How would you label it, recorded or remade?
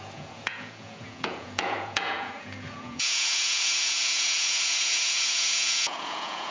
remade